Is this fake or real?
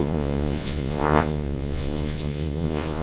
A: fake